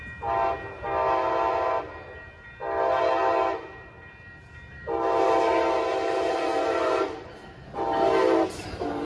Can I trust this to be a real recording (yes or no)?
yes